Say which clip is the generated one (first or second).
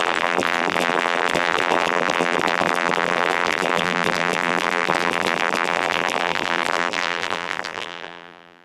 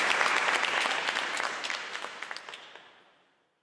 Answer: first